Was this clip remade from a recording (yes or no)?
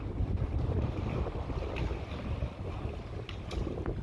no